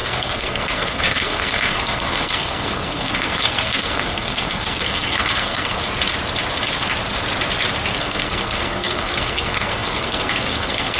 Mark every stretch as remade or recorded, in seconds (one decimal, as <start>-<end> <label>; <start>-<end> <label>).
0.0-5.8 remade; 5.8-8.0 recorded; 8.0-11.0 remade